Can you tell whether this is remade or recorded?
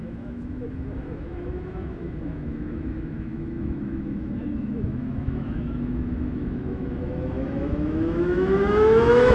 remade